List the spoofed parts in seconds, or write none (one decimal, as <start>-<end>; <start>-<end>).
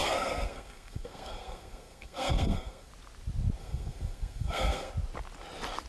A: 0.0-2.9; 3.6-4.9